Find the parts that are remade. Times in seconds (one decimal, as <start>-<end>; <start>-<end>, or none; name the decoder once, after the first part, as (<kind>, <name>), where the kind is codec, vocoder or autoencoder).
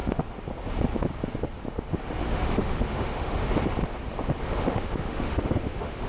2.3-3.4 (autoencoder, DAC-VAE); 4.4-6.1